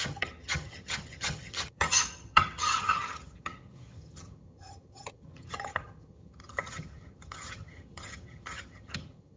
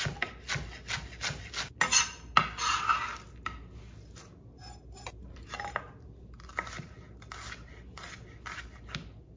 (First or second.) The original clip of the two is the second